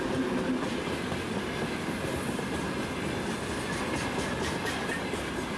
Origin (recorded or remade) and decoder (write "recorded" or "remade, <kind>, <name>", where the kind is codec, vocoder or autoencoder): recorded